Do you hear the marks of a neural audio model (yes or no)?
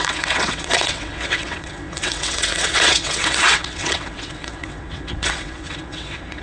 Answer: yes